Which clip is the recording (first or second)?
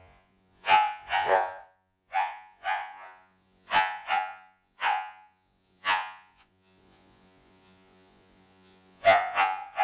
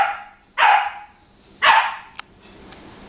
second